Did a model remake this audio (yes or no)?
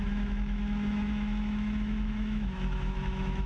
yes